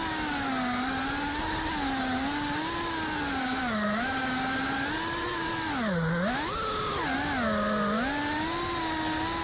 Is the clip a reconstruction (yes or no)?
no